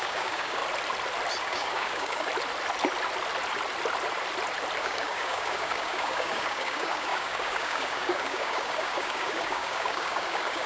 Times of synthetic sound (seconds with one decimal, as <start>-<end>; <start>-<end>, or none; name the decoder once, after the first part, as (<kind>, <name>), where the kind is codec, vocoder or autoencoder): 0.0-0.6 (codec, DAC); 1.4-2.3; 4.8-10.7